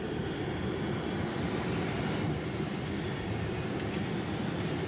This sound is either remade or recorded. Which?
recorded